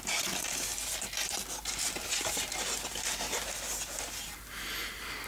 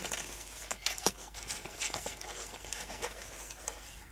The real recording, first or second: first